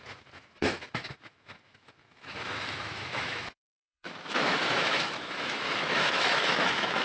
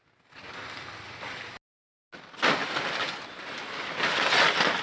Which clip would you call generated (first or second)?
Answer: first